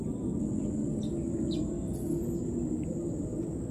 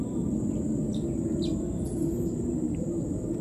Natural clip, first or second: first